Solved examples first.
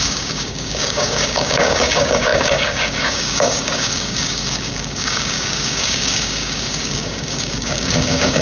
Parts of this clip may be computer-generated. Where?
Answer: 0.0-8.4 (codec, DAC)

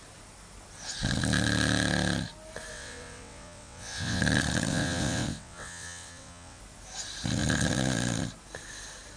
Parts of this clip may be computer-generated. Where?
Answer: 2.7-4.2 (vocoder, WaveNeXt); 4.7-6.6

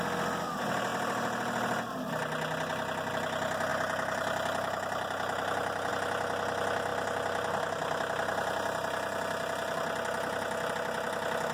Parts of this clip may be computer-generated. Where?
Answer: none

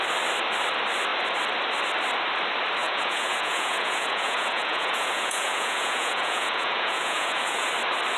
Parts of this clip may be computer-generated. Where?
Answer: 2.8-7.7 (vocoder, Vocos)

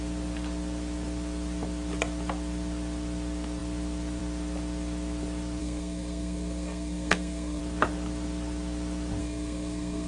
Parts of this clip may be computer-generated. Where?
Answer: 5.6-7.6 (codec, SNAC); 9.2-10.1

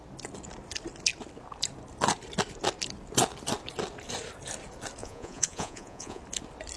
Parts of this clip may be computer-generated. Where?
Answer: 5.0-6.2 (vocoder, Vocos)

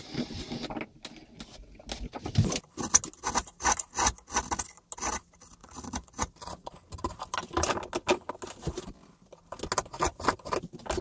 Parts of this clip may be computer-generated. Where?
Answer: 5.6-6.7 (vocoder, Vocos)